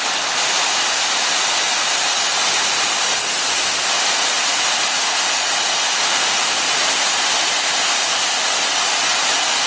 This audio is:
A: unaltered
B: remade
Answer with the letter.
A